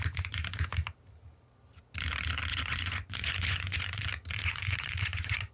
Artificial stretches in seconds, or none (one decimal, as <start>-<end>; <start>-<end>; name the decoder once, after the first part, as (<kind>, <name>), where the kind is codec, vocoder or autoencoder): 2.5-4.0 (vocoder, Vocos); 4.4-5.5